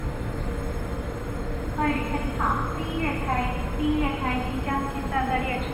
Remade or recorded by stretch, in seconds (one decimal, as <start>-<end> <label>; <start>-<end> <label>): 0.0-5.7 recorded